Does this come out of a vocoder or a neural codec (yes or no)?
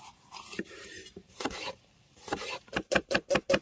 yes